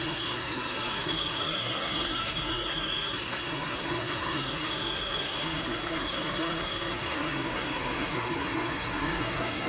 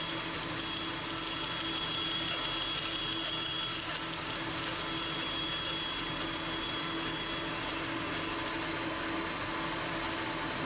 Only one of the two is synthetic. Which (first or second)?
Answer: first